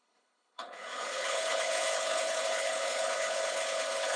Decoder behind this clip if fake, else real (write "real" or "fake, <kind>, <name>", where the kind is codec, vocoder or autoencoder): fake, codec, HILCodec